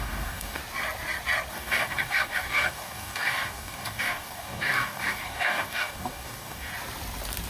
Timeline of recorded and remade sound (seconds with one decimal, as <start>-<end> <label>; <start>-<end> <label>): 0.0-0.6 remade; 0.6-1.5 recorded; 1.5-6.7 remade; 6.7-7.5 recorded

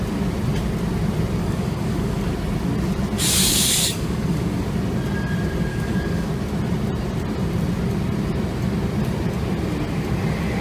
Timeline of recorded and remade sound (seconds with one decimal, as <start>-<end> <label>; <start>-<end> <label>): 0.0-1.4 recorded; 1.4-2.2 remade; 2.2-3.4 recorded; 3.4-4.7 remade; 4.7-5.7 recorded; 5.7-6.3 remade; 6.3-10.6 recorded